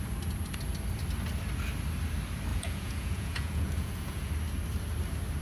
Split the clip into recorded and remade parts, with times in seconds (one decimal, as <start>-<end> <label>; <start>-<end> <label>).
0.0-2.5 recorded; 2.5-4.3 remade; 4.3-5.4 recorded

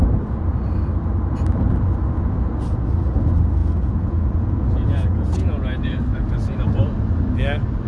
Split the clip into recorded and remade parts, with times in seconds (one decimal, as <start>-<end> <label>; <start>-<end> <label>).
0.0-3.6 recorded; 3.6-6.0 remade; 6.0-7.9 recorded

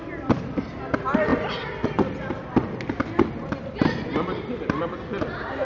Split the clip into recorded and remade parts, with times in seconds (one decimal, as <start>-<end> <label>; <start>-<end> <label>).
0.0-5.6 recorded

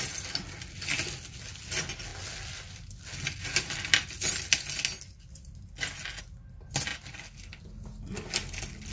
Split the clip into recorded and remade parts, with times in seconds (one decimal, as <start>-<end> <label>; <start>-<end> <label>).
0.0-8.9 recorded

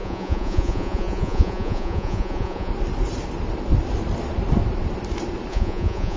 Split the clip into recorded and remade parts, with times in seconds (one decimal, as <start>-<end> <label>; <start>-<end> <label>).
0.0-2.7 remade; 2.7-5.5 recorded; 5.5-6.2 remade

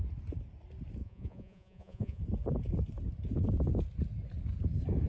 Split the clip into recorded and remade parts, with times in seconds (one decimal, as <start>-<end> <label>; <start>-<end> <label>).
0.0-1.0 recorded; 1.0-2.2 remade; 2.2-5.1 recorded

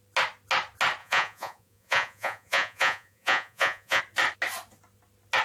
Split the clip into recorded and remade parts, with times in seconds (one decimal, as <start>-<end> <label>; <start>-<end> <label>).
0.0-1.0 recorded; 1.0-4.0 remade; 4.0-5.4 recorded

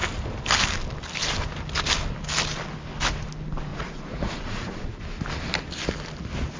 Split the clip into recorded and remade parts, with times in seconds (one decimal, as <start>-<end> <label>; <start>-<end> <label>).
0.0-3.7 recorded; 3.7-5.0 remade; 5.0-6.6 recorded